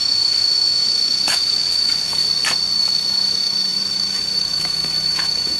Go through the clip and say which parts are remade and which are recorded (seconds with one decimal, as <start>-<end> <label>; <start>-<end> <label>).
0.0-2.2 remade; 2.2-2.8 recorded; 2.8-5.6 remade